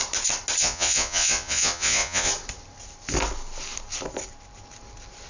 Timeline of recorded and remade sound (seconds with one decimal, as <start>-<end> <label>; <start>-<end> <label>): 0.0-0.6 recorded; 0.6-2.3 remade; 2.3-5.3 recorded